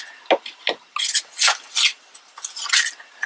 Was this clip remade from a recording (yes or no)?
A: no